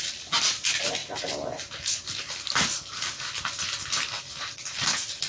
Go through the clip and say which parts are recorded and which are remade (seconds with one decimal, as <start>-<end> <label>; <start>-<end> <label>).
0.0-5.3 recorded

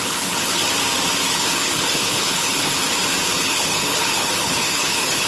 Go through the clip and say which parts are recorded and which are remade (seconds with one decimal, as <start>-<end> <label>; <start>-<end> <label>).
0.0-0.6 remade; 0.6-1.3 recorded; 1.3-2.8 remade; 2.8-3.4 recorded; 3.4-5.3 remade

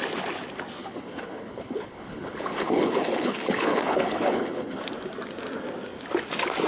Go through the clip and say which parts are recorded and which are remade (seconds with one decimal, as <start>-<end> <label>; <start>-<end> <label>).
0.0-0.8 recorded; 0.8-4.8 remade; 4.8-6.7 recorded